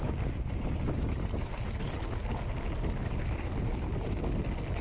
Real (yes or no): yes